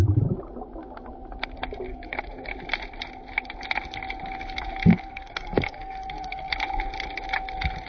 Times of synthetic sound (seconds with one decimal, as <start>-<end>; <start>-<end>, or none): 1.9-2.5; 4.9-6.5